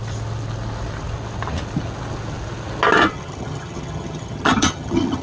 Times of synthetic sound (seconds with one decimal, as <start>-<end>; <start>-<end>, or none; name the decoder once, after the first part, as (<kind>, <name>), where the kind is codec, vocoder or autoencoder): 3.1-5.2 (vocoder, HiFi-GAN)